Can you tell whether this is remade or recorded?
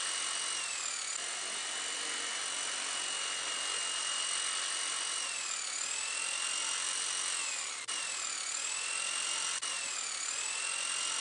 recorded